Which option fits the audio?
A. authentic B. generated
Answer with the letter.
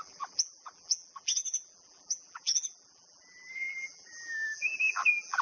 B